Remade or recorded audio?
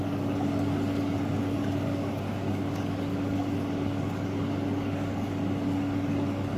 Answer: remade